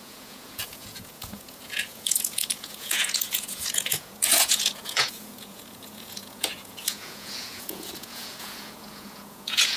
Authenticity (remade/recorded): remade